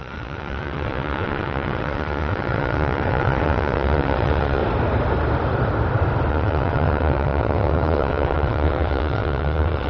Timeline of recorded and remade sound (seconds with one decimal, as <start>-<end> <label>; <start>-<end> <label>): 0.0-4.6 remade; 4.6-6.3 recorded; 6.3-9.9 remade